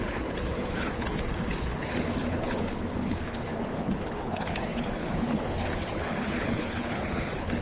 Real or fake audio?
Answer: fake